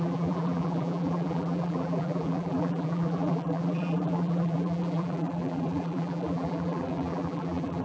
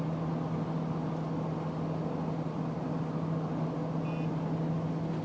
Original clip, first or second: second